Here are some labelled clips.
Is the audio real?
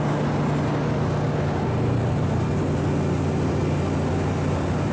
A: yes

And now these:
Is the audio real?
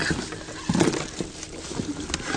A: yes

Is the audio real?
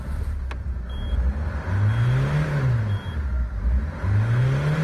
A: yes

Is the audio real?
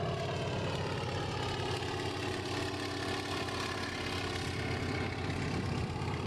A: yes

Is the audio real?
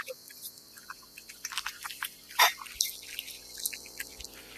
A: yes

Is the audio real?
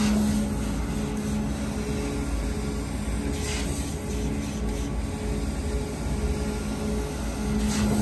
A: yes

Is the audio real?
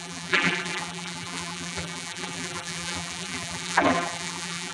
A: no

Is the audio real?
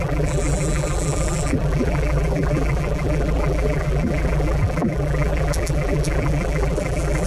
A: no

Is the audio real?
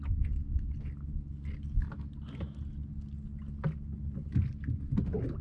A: yes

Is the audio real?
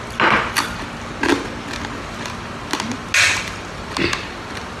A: yes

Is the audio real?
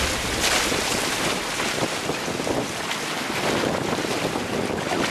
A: yes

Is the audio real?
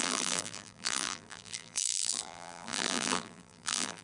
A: no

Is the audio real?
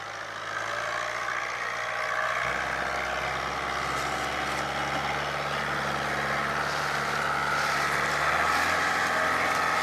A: yes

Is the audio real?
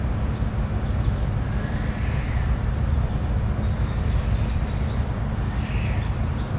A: yes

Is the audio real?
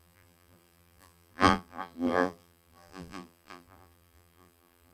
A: no